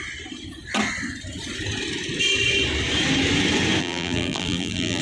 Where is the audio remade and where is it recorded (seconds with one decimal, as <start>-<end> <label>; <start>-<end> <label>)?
0.0-3.8 recorded; 3.8-5.0 remade